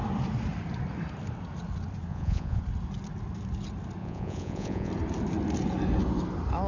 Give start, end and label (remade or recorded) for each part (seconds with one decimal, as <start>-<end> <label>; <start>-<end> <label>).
0.0-2.1 recorded; 2.1-2.6 remade; 2.6-4.0 recorded; 4.0-4.9 remade; 4.9-6.7 recorded